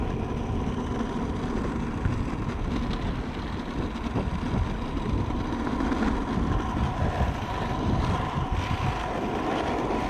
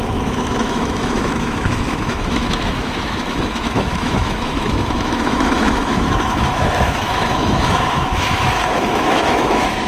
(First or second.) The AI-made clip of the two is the second